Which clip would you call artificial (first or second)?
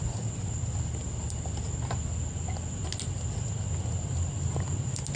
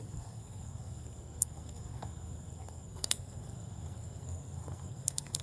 second